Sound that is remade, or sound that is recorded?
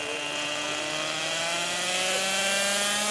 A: recorded